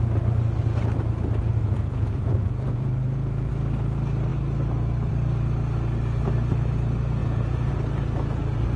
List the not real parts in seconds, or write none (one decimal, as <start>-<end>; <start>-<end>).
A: 1.4-3.5; 7.2-7.7